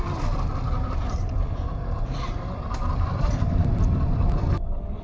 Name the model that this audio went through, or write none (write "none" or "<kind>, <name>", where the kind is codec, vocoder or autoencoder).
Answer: vocoder, BigVGAN v2